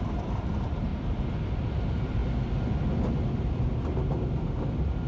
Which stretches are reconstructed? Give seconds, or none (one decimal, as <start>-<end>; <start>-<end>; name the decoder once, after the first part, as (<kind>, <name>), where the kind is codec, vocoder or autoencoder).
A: 0.0-0.9 (vocoder, BigVGAN v2); 1.6-2.2